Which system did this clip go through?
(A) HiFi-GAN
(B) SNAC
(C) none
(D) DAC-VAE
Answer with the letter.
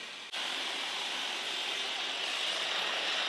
C